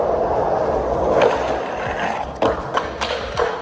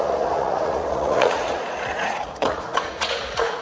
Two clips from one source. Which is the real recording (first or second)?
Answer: first